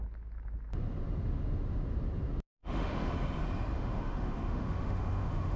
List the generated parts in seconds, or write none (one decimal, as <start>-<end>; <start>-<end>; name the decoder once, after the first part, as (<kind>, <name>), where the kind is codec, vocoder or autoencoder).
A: 2.6-3.1 (autoencoder, DAC-VAE); 3.7-5.6